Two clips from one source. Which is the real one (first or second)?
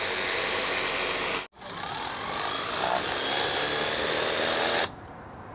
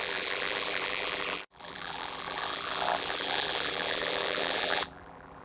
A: first